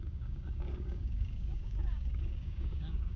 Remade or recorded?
remade